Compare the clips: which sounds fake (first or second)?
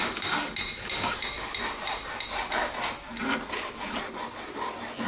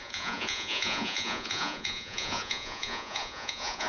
second